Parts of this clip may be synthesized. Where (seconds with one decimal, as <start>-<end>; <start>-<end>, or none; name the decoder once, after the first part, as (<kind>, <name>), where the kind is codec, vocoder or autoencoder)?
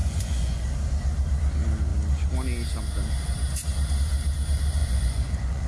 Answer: 0.0-0.6 (vocoder, Vocos); 4.8-5.7